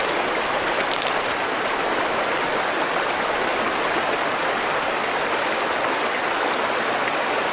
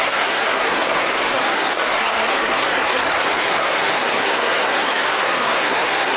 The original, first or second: first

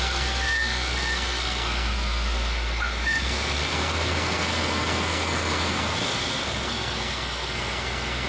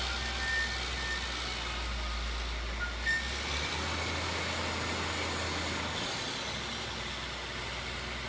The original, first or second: second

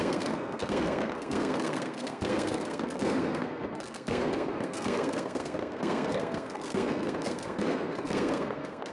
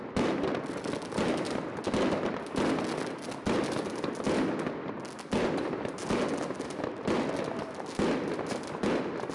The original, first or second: second